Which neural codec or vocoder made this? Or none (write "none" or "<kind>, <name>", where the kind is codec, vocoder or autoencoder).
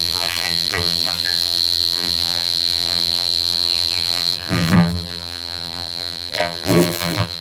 vocoder, BigVGAN v2